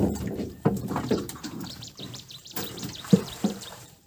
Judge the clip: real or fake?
fake